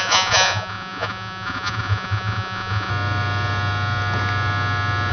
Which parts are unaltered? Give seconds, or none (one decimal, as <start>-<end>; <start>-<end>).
2.9-5.1